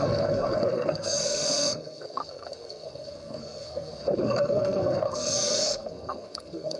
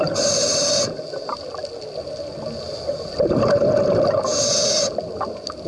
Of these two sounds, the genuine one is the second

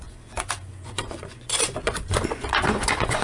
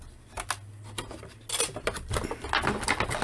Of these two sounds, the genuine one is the second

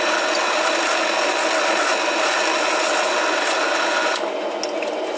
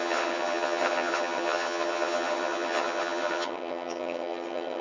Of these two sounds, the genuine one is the first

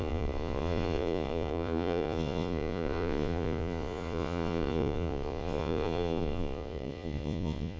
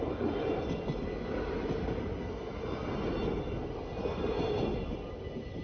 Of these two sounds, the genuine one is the second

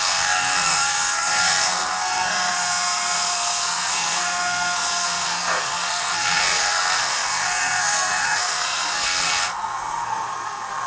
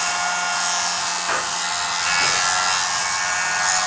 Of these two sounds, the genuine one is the second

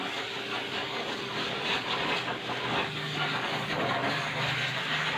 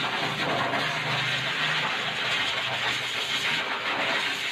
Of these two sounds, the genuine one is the second